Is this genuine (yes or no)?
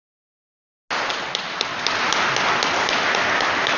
yes